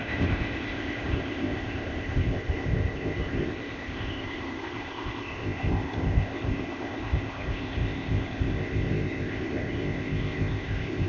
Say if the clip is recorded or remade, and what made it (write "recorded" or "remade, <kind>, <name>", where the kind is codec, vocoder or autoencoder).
remade, codec, ZipCodec